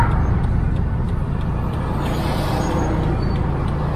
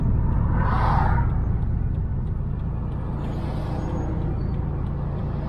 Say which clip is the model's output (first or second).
first